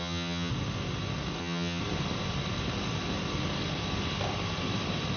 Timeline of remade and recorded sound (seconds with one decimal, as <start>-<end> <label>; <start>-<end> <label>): 0.0-0.5 remade; 0.5-1.4 recorded; 1.4-1.8 remade; 1.8-5.2 recorded

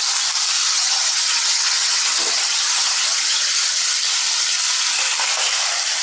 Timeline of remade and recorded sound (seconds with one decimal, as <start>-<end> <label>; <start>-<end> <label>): 0.0-0.6 recorded; 0.6-3.9 remade; 3.9-6.0 recorded

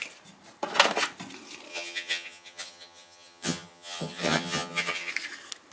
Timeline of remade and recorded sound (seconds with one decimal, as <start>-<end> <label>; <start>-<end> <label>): 0.0-1.7 recorded; 1.7-5.1 remade; 5.1-5.7 recorded

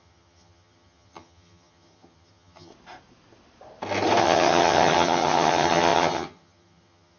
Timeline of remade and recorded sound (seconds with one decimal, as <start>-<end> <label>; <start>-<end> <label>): 0.0-2.7 remade; 2.7-4.2 recorded; 4.2-7.2 remade

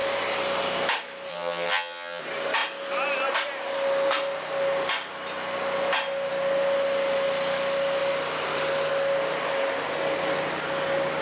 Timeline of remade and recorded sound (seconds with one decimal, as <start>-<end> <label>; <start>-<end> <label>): 0.0-1.3 recorded; 1.3-2.2 remade; 2.2-11.2 recorded

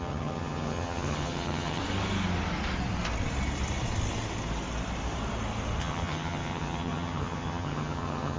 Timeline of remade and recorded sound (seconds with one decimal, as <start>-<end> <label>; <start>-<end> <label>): 0.0-1.8 remade; 1.8-5.8 recorded; 5.8-8.4 remade

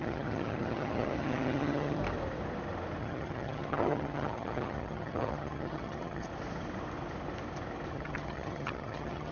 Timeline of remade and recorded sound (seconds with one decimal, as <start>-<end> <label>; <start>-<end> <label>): 0.0-2.0 remade; 2.0-3.0 recorded; 3.0-6.3 remade; 6.3-7.9 recorded; 7.9-9.3 remade

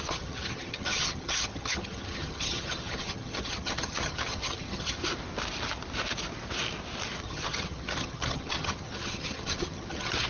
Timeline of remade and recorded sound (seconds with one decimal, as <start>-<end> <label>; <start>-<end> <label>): 0.0-5.0 remade; 5.0-7.2 recorded; 7.2-10.3 remade